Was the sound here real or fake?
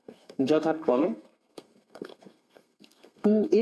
fake